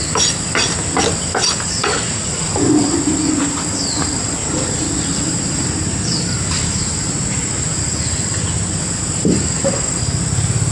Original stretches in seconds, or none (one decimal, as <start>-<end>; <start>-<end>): 0.0-1.8; 2.8-4.4; 7.8-10.7